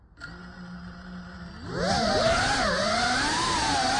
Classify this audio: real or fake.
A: real